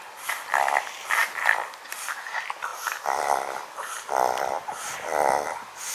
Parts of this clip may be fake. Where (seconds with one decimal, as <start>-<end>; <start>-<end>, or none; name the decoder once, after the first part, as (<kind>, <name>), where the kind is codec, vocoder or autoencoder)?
none